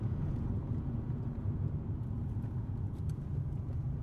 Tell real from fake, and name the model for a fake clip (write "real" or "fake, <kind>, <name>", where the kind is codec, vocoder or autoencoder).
fake, vocoder, Vocos